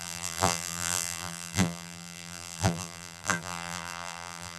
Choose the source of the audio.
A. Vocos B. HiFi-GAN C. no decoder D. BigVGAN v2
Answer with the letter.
D